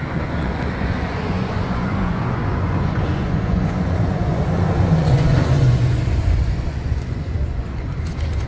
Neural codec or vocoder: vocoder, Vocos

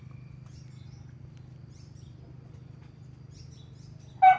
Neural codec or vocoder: none